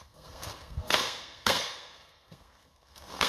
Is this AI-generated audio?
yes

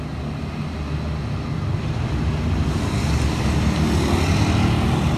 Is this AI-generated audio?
no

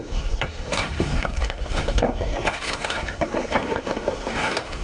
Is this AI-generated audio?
yes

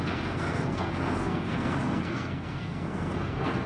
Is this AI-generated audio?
yes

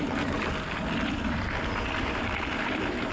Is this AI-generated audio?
no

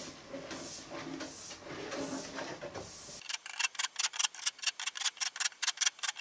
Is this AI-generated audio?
no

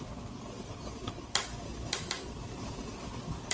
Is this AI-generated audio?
no